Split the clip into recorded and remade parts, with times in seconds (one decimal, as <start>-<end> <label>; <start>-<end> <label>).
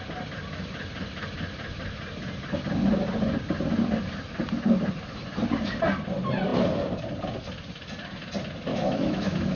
0.0-8.7 recorded; 8.7-9.6 remade